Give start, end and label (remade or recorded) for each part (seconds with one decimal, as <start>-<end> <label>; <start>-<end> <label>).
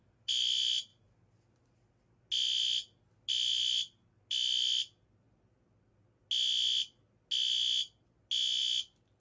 0.0-9.2 recorded